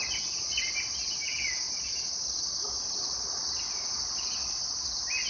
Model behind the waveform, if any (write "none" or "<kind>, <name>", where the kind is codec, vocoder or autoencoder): none